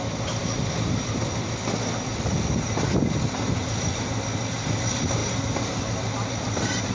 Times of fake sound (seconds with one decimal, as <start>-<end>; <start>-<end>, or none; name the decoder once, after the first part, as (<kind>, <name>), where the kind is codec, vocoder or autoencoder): none